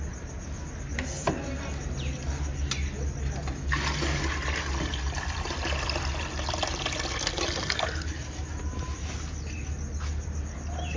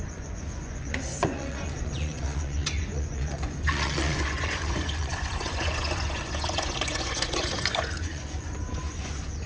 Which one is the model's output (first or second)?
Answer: second